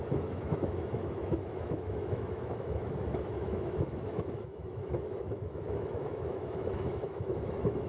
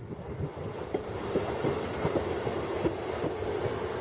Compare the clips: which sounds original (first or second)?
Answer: second